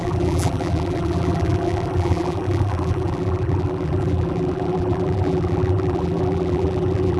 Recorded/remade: remade